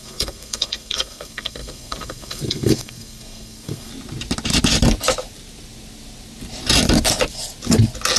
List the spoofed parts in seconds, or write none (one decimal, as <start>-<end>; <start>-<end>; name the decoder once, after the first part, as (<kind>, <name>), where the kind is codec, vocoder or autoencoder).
0.0-3.9 (codec, SNAC)